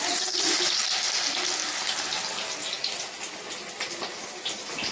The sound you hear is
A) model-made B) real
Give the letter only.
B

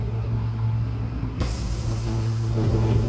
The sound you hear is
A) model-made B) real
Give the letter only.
A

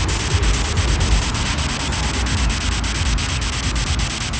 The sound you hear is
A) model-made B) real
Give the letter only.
B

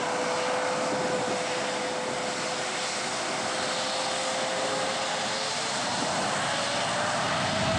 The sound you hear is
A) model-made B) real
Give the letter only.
B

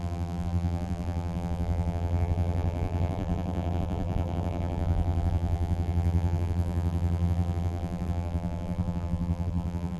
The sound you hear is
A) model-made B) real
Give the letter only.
A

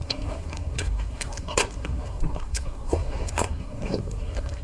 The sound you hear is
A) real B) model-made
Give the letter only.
B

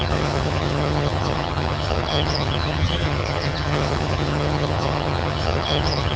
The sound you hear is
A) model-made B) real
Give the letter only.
A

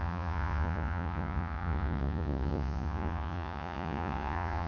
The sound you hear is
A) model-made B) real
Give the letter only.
A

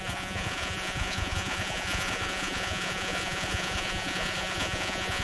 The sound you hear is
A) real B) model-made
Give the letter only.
B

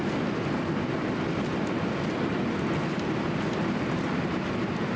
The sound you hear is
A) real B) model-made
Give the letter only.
A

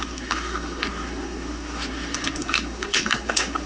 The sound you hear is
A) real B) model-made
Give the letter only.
B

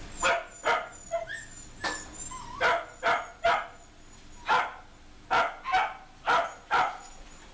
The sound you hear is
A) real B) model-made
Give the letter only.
A